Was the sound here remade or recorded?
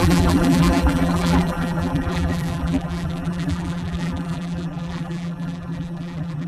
remade